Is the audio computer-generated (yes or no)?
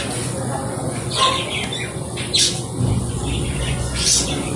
yes